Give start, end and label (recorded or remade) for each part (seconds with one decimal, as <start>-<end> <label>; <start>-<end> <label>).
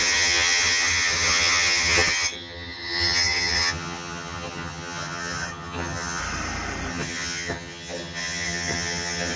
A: 0.0-6.2 remade; 6.2-6.9 recorded; 6.9-9.4 remade